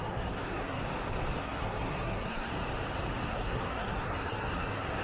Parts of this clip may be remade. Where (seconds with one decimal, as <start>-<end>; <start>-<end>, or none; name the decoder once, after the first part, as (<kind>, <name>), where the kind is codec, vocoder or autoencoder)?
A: 0.0-0.8 (codec, SNAC); 1.4-2.5; 3.3-5.0